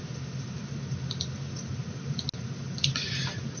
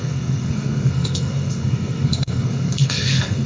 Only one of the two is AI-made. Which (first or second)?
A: second